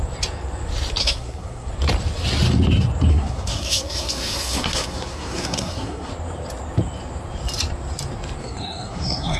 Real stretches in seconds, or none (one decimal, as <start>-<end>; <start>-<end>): 0.0-1.0; 1.7-3.1; 6.1-8.4